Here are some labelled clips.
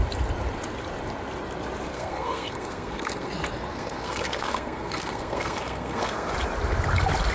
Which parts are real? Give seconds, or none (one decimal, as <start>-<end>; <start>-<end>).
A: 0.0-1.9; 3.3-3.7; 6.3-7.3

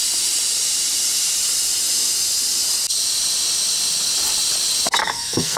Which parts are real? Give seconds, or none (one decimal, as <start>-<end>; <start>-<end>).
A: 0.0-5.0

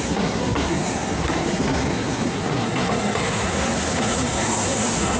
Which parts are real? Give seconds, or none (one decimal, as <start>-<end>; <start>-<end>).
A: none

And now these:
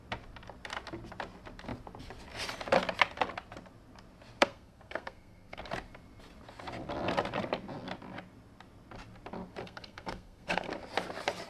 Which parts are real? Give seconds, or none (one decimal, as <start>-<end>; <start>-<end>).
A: 0.0-4.4; 5.6-9.6; 10.7-11.5

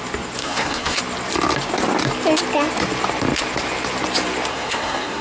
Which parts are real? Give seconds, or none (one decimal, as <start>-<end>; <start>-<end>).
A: 0.0-0.4; 1.0-4.5

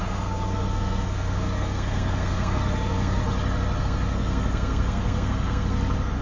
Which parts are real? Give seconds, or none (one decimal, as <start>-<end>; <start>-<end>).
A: 3.2-3.8

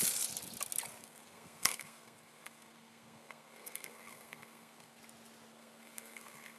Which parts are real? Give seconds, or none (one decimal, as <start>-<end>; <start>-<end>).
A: 0.0-1.0; 5.0-5.5